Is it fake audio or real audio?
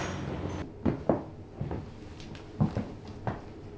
real